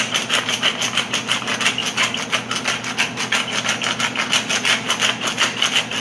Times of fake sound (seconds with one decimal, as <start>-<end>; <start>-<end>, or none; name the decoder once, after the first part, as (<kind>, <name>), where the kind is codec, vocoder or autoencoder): none